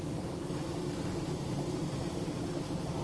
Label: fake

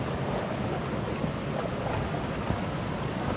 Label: real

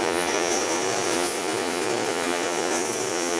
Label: fake